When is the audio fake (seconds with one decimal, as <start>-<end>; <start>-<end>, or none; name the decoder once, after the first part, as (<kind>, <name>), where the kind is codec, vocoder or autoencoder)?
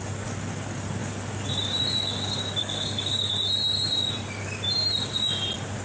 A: 2.6-3.3 (codec, SNAC)